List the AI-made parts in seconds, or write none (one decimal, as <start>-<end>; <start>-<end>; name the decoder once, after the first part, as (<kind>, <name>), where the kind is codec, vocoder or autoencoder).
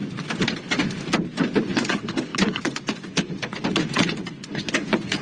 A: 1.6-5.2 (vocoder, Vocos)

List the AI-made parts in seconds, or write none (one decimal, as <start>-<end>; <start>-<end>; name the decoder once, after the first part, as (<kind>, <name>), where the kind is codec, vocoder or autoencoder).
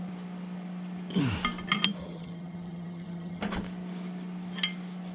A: 2.0-3.4 (vocoder, HiFi-GAN)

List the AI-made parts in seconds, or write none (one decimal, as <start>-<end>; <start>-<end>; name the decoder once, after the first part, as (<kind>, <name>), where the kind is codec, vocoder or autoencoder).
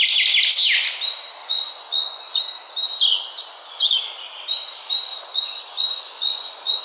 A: 1.4-2.4 (vocoder, Vocos); 3.1-4.0; 5.1-6.8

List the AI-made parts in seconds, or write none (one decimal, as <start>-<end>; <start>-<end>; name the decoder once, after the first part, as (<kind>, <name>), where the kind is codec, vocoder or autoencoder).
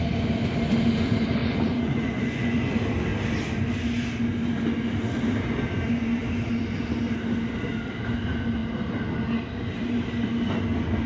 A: 1.4-2.7 (vocoder, Vocos)